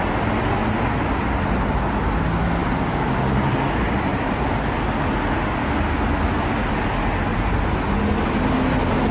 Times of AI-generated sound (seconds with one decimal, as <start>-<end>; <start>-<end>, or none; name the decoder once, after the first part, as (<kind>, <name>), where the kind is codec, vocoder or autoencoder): 7.3-7.9 (vocoder, BigVGAN v2)